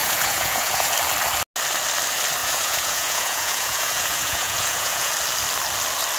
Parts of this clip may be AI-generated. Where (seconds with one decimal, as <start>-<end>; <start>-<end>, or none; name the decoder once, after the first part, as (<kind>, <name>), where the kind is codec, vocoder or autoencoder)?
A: 0.0-0.9 (vocoder, Vocos); 2.4-5.1